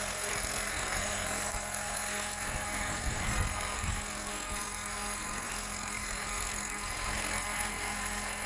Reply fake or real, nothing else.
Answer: fake